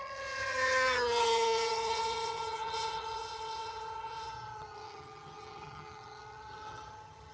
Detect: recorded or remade remade